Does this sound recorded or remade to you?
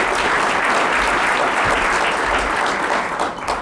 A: recorded